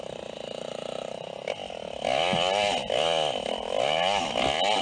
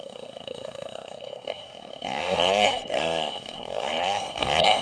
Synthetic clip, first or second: second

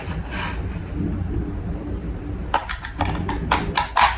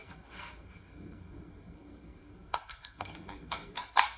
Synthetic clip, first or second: second